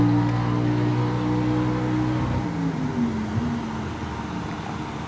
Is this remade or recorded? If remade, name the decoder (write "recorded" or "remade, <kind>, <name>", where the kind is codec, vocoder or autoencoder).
recorded